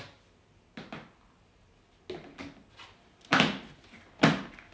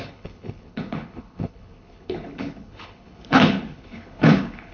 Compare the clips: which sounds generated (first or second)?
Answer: second